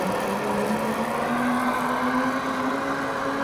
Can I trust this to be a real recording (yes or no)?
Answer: yes